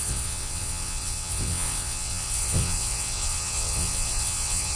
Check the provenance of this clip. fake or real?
fake